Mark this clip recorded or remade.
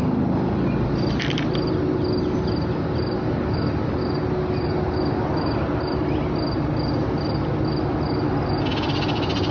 recorded